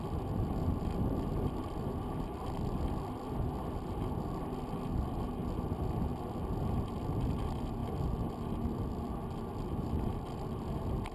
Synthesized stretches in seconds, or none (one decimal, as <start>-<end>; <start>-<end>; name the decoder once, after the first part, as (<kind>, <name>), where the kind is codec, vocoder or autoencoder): none